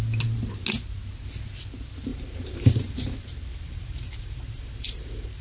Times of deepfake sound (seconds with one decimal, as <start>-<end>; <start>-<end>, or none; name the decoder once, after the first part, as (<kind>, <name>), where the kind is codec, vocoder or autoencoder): 2.1-5.4 (vocoder, BigVGAN v2)

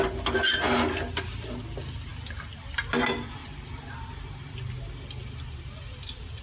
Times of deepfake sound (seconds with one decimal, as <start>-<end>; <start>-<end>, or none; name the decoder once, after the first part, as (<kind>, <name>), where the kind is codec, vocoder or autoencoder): none

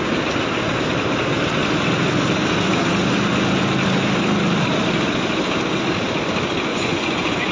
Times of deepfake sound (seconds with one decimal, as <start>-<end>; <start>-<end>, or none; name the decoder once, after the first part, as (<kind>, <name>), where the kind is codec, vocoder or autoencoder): 6.7-7.5 (vocoder, Vocos)

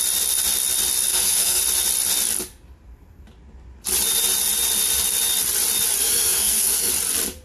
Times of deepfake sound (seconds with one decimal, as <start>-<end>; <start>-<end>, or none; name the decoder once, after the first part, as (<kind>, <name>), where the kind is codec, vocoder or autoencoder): 1.1-1.6 (codec, SNAC); 6.0-6.9

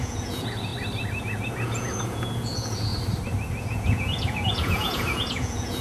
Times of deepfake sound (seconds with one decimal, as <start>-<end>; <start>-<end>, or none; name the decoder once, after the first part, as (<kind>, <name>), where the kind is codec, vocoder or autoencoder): 0.0-0.7 (vocoder, Vocos); 1.2-2.9; 3.6-5.8